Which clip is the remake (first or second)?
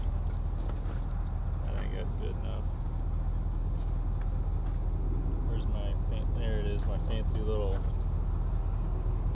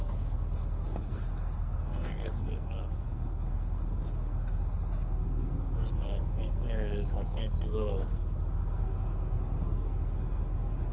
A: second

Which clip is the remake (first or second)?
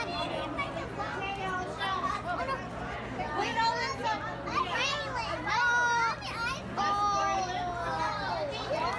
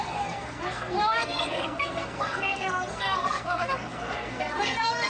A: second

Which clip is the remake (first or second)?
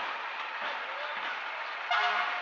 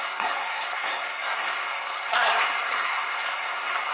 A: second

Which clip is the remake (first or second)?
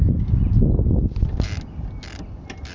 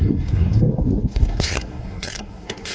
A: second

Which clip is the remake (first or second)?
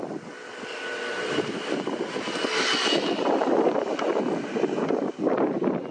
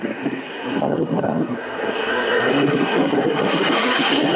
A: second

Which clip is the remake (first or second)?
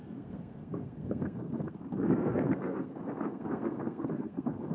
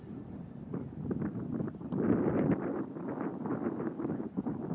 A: first